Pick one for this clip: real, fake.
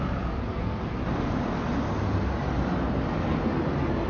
real